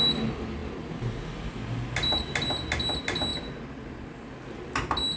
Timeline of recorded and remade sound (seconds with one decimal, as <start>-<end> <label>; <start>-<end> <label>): 0.0-5.2 recorded